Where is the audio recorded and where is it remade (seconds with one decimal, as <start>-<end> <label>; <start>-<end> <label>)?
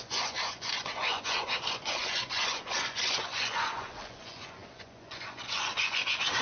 0.0-6.4 remade